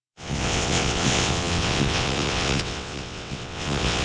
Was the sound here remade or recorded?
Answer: remade